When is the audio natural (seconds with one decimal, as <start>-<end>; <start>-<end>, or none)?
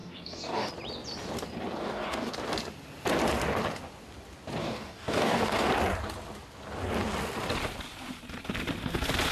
0.7-1.8; 2.3-4.6; 5.7-9.3